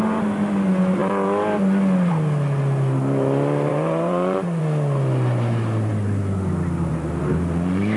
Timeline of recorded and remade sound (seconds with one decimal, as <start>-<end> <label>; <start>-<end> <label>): 0.0-3.7 recorded; 3.7-4.6 remade; 4.6-8.0 recorded